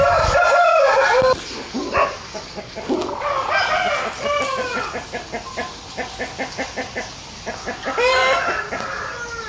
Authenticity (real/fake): real